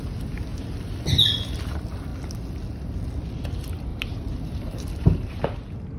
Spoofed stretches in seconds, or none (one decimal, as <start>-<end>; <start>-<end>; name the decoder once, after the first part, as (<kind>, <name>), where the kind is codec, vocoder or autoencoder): 3.9-5.4 (vocoder, BigVGAN v2)